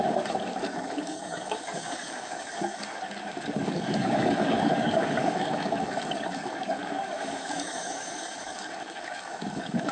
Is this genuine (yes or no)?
no